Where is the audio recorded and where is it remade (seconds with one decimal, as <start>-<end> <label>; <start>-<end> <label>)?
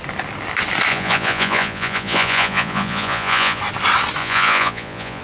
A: 0.0-0.9 recorded; 0.9-3.6 remade; 3.6-4.2 recorded; 4.2-5.2 remade